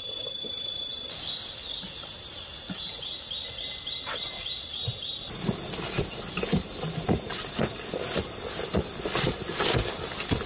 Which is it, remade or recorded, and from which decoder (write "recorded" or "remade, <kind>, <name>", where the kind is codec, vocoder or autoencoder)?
recorded